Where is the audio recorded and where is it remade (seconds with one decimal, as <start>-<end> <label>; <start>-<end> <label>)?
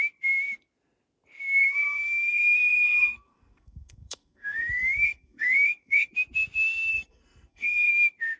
0.0-1.6 recorded; 1.6-6.1 remade; 6.1-6.9 recorded; 6.9-7.9 remade; 7.9-8.4 recorded